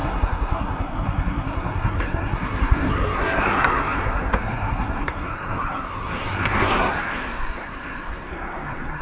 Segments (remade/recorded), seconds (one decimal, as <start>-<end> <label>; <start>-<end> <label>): 0.0-9.0 remade